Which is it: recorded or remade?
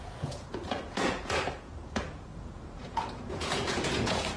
remade